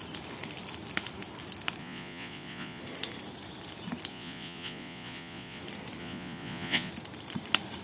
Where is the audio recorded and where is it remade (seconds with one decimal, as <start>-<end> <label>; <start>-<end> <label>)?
0.0-1.8 recorded; 1.8-2.8 remade; 2.8-4.1 recorded; 4.1-5.6 remade; 5.6-6.0 recorded; 6.0-6.9 remade; 6.9-7.8 recorded